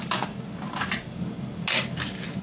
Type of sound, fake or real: real